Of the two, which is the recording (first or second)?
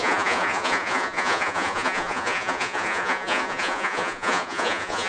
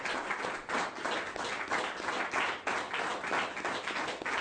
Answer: second